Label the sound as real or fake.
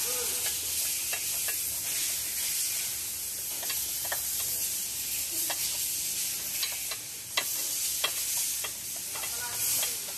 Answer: real